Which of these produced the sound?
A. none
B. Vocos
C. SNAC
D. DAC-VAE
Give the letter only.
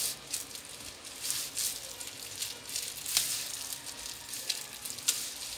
A